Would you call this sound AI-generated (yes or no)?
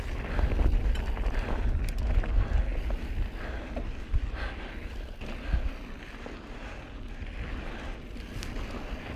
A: no